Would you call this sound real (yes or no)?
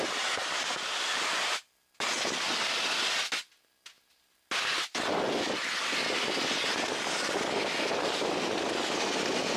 yes